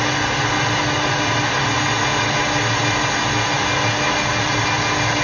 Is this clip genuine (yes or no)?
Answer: yes